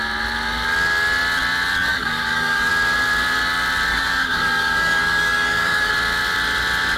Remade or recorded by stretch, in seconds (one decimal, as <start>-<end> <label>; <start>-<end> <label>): 0.0-1.9 recorded; 1.9-2.7 remade; 2.7-3.9 recorded; 3.9-5.9 remade; 5.9-7.0 recorded